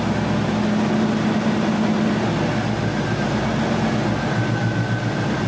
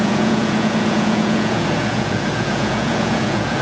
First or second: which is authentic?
first